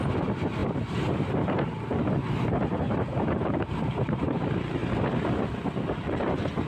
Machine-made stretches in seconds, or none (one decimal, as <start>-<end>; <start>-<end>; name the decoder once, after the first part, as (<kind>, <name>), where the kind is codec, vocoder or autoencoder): 0.0-4.8 (vocoder, BigVGAN v2); 5.9-6.7